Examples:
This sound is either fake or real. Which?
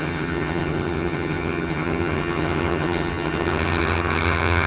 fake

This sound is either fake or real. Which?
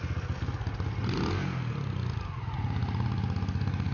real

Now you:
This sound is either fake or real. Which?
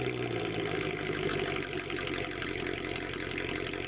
real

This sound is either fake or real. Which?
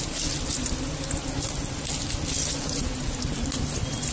real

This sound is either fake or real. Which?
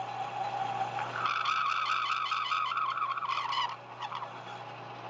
real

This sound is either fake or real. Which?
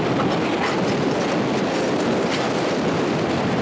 real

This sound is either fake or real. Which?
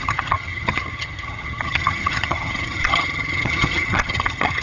fake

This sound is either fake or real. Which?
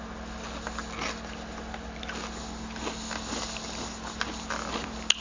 real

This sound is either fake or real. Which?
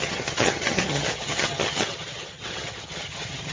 fake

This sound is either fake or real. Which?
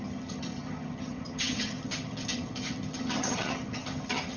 fake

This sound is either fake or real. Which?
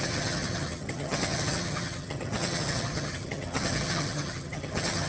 fake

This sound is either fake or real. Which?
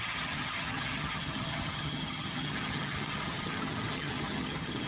fake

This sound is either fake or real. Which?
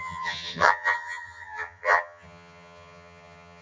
fake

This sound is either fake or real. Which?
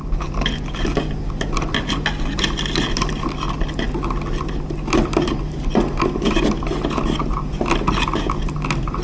real